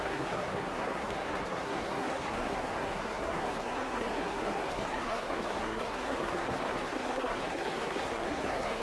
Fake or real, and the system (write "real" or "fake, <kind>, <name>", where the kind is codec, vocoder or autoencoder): fake, codec, SNAC